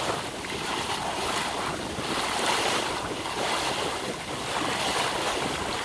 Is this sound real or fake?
real